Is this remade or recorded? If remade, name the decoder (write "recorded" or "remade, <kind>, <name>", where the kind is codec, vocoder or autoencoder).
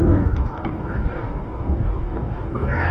remade, codec, DAC